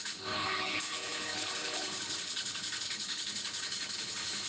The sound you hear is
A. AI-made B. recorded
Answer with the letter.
A